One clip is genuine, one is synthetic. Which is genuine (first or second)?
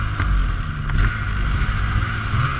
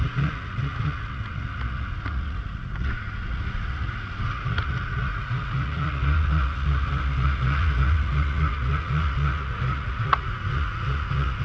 first